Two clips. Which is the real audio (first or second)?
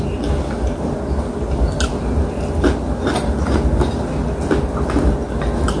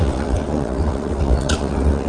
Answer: first